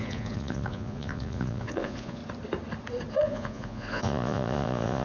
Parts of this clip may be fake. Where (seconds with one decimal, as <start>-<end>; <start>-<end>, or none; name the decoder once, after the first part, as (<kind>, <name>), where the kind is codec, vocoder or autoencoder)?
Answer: 0.0-2.2 (vocoder, Vocos); 3.1-5.0